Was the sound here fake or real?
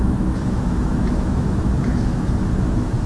fake